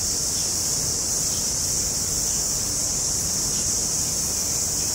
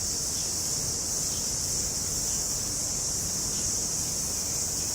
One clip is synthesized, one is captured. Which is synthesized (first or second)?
first